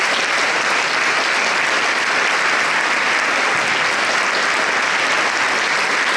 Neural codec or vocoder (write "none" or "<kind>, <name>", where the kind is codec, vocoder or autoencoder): none